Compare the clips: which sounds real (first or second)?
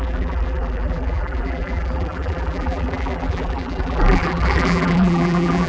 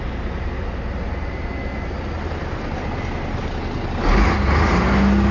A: second